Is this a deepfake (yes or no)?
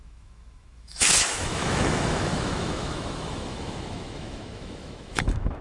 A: yes